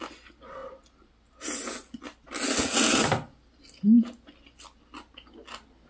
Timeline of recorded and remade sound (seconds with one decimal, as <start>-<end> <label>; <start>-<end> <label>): 0.0-5.9 recorded